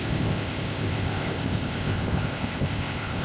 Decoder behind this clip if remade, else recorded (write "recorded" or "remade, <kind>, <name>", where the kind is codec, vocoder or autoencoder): remade, codec, ZipCodec